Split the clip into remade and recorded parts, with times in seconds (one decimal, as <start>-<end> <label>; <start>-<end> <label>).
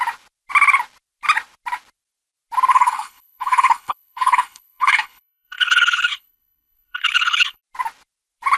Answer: 0.0-2.7 recorded; 2.7-7.6 remade; 7.6-8.6 recorded